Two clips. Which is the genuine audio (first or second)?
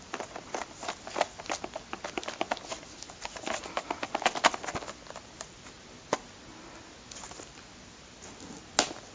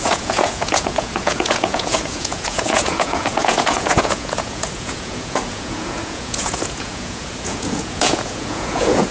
first